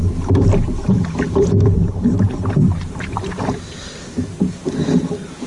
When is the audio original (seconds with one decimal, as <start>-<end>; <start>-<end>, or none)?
3.3-5.5